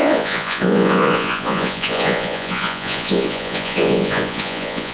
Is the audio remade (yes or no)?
yes